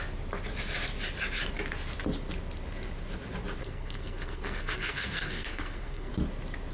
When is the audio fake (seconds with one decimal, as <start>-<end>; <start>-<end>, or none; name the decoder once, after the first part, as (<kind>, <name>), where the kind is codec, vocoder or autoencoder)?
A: 3.6-6.1 (codec, SNAC)